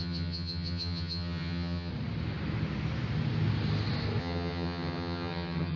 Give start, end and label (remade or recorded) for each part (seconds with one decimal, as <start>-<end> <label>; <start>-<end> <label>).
0.0-1.9 remade; 1.9-4.2 recorded; 4.2-5.8 remade